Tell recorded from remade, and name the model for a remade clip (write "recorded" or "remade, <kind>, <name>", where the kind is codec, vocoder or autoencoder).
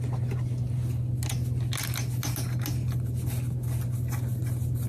recorded